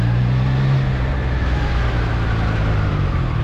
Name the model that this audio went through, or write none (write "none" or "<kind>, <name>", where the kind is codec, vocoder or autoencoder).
none